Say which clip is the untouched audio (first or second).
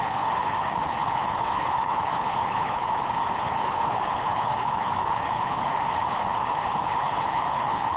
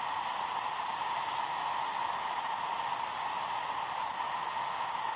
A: second